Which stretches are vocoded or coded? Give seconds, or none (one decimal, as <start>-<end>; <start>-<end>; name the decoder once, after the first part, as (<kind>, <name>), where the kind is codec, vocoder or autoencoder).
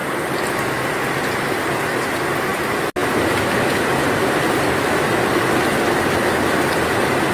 none